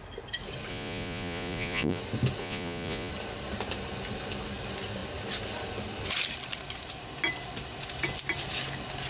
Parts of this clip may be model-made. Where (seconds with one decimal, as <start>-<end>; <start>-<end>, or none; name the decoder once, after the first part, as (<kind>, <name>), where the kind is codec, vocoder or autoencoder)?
0.7-2.0 (vocoder, Vocos); 2.4-3.1